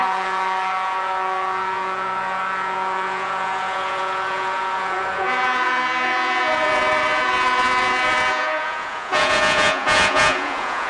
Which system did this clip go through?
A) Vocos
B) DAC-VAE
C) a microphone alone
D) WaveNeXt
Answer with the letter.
A